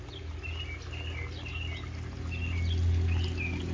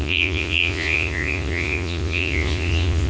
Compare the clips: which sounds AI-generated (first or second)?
second